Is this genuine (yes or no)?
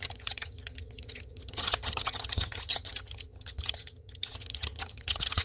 no